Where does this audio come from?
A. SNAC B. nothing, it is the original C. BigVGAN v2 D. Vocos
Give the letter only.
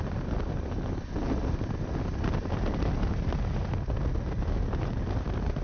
B